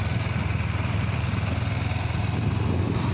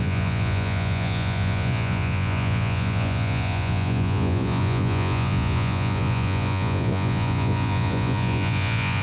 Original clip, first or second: first